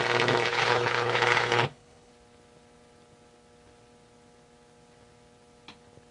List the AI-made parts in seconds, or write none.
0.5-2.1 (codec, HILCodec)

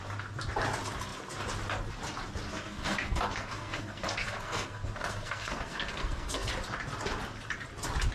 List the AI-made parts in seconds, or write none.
2.5-6.5 (codec, SNAC)

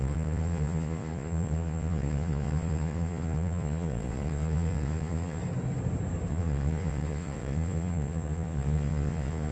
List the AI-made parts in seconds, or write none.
0.0-5.4 (vocoder, Vocos); 6.3-9.5